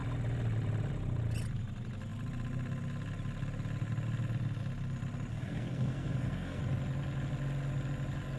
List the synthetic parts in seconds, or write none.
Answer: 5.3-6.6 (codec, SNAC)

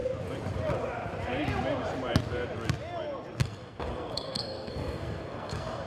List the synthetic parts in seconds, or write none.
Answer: 3.4-5.9 (codec, SNAC)

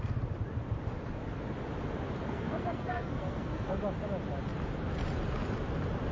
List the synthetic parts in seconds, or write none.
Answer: 2.2-3.8 (codec, SNAC)